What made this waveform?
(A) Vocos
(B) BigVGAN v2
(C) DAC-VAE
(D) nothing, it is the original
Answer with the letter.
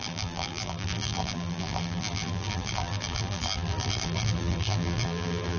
B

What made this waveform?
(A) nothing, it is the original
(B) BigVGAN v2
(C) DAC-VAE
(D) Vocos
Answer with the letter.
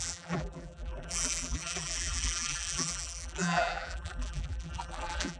B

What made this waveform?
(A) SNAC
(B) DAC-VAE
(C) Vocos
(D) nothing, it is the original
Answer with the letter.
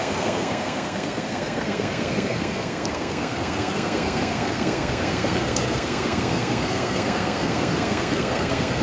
A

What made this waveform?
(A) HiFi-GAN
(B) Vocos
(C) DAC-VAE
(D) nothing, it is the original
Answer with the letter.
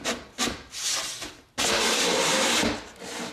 D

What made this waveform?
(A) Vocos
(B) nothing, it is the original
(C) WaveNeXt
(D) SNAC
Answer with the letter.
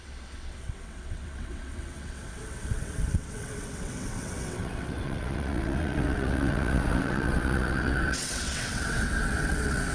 C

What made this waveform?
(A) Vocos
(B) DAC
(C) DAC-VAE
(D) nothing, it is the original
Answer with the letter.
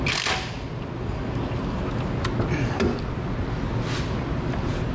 D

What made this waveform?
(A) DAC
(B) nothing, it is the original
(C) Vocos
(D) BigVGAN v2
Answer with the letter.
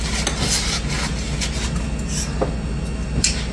B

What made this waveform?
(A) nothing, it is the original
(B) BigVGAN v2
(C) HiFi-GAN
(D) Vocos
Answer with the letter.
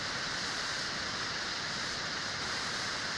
A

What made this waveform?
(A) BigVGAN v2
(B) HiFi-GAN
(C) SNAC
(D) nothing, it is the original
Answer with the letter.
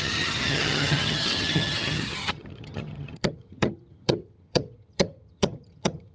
B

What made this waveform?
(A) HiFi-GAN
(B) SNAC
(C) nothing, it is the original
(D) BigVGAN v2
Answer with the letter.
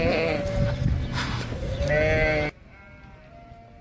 C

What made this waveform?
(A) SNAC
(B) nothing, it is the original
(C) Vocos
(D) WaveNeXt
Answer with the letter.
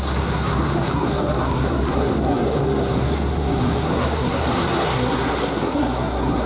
A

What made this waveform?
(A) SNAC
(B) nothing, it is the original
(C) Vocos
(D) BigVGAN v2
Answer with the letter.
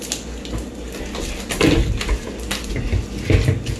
B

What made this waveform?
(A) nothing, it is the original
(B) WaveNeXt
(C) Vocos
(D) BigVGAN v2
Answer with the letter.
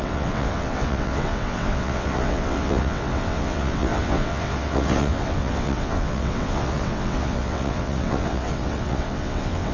B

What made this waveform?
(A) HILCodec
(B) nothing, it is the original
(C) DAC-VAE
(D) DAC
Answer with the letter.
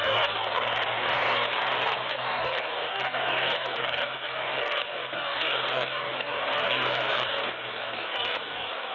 D